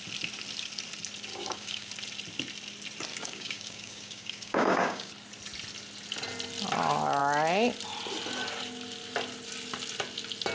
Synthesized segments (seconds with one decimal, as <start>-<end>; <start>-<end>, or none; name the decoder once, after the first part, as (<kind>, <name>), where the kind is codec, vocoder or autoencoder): 1.3-1.9 (codec, DAC); 3.1-5.1